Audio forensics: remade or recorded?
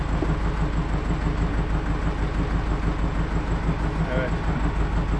recorded